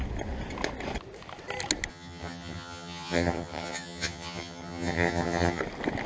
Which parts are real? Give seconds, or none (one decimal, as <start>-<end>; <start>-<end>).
0.0-1.9; 5.6-6.1